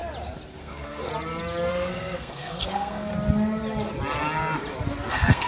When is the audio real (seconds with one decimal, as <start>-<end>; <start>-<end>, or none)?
0.0-0.6; 1.1-1.7; 3.1-5.1